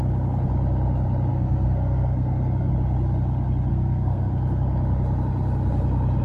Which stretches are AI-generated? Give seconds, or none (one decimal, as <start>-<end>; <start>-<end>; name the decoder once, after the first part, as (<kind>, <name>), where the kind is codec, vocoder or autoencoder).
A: 1.3-2.7 (codec, SNAC); 3.7-4.3